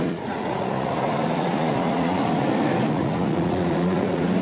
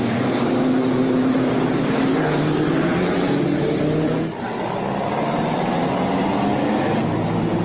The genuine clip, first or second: second